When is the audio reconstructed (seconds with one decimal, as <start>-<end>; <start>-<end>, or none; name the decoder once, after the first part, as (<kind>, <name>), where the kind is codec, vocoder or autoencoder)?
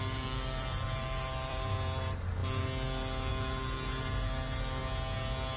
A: 0.0-2.4 (vocoder, BigVGAN v2); 3.3-4.8